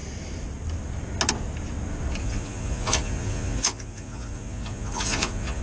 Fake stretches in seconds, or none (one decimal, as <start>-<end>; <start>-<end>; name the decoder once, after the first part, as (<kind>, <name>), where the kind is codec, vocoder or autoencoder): 2.2-5.6 (vocoder, Vocos)